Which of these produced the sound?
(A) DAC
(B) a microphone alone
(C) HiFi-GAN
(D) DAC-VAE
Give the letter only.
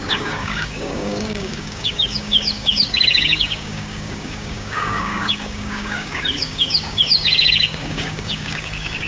A